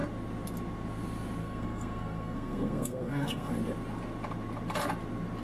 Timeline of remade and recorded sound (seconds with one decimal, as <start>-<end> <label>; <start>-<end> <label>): 0.0-1.4 recorded; 1.4-3.5 remade; 3.5-5.4 recorded